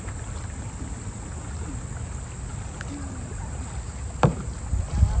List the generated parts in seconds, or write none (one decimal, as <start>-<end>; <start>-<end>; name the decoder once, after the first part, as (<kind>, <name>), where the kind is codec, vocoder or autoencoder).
none